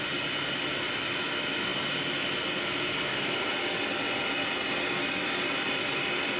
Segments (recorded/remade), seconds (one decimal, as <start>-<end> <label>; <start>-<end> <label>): 0.0-6.4 recorded